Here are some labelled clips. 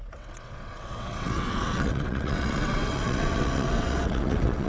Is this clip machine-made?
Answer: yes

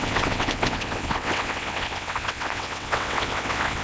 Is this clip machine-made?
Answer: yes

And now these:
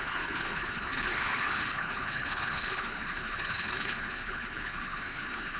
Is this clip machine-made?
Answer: yes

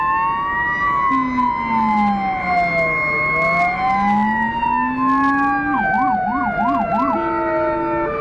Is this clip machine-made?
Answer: no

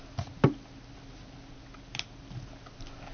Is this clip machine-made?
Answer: no